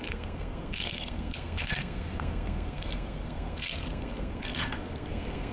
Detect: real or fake fake